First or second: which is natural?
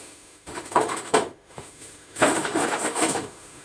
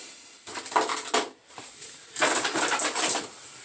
second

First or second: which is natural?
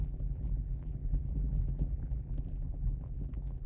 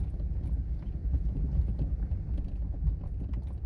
second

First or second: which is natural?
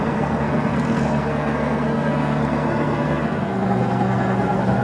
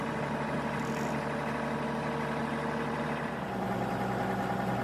second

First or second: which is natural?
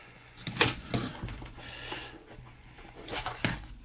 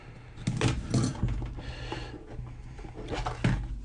second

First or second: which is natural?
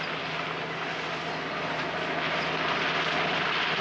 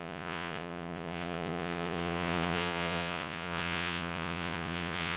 first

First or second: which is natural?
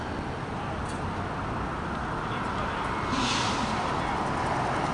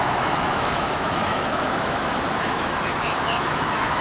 first